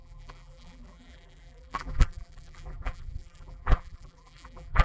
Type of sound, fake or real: fake